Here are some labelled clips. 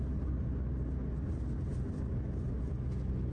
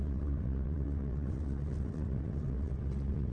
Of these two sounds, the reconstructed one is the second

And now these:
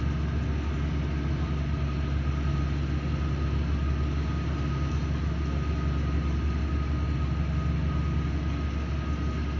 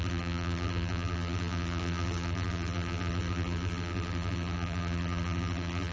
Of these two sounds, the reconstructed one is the second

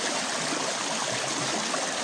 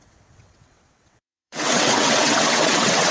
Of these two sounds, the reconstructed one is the second